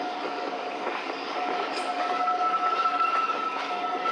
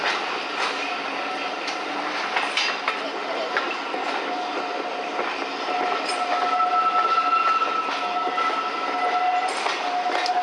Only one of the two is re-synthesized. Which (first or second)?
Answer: first